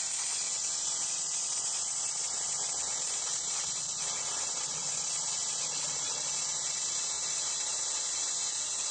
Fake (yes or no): yes